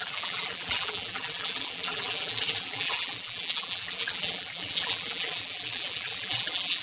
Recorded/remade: remade